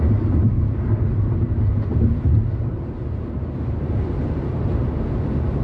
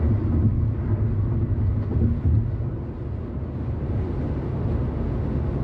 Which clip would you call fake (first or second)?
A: first